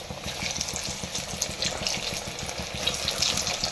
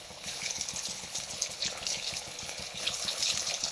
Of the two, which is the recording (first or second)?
first